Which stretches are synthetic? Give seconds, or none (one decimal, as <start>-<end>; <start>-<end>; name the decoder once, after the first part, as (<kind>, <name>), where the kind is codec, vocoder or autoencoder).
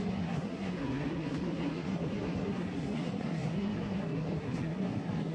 0.0-5.3 (codec, SNAC)